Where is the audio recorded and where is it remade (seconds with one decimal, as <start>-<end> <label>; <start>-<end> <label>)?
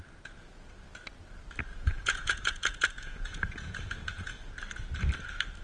0.0-1.7 recorded; 1.7-4.5 remade; 4.5-5.6 recorded